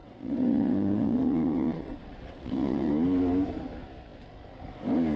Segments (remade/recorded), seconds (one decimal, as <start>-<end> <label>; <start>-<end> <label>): 0.0-2.9 remade; 2.9-5.2 recorded